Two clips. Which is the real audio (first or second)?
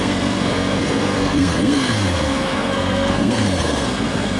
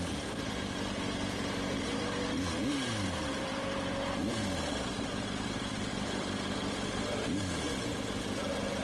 second